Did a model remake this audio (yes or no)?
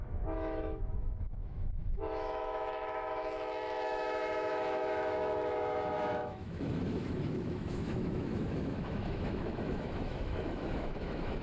yes